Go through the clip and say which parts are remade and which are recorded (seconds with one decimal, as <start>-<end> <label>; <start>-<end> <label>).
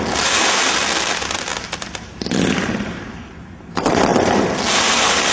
0.0-5.3 recorded